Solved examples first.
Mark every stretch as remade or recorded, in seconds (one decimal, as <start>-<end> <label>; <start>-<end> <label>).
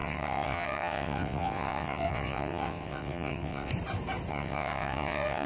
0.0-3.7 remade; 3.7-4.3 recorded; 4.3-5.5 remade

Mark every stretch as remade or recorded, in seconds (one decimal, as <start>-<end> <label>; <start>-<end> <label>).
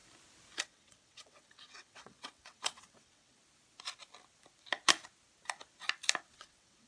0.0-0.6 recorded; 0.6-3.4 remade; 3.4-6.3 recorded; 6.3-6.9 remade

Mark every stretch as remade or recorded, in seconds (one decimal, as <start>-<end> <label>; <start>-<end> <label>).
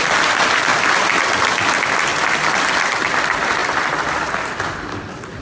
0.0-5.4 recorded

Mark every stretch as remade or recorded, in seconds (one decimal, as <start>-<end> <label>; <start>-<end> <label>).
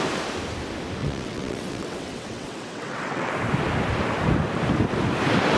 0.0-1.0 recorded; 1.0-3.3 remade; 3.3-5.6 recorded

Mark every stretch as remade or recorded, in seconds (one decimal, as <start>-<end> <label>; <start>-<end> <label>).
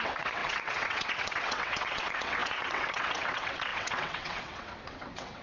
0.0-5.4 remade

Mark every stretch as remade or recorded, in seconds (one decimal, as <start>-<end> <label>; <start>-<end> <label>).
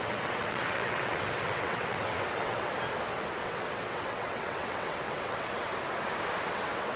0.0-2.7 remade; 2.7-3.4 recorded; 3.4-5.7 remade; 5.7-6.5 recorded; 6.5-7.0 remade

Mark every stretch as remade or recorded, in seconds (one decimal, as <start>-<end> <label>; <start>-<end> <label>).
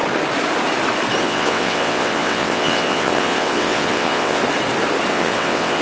0.0-1.2 recorded; 1.2-4.4 remade; 4.4-5.1 recorded; 5.1-5.8 remade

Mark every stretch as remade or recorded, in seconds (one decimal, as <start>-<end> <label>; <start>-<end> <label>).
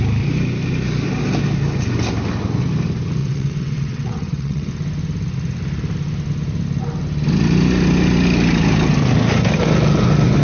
0.0-3.2 recorded; 3.2-4.7 remade; 4.7-10.4 recorded